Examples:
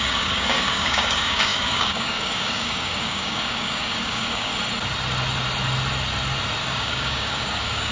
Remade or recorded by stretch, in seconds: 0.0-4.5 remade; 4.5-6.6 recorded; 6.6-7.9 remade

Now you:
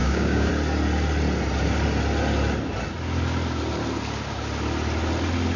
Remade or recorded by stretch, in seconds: 0.0-0.5 remade; 0.5-5.6 recorded

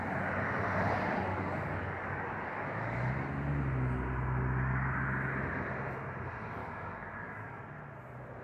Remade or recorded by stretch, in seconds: 0.0-1.3 recorded; 1.3-3.1 remade; 3.1-6.6 recorded; 6.6-7.6 remade; 7.6-8.4 recorded